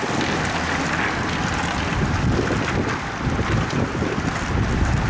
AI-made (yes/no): no